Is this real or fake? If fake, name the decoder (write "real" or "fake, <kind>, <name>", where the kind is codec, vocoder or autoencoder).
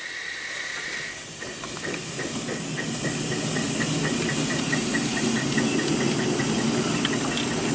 real